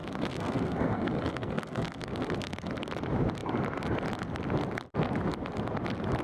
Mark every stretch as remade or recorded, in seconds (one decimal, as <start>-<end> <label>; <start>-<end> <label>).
0.0-2.7 remade; 2.7-6.2 recorded